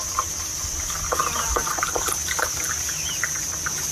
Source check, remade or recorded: recorded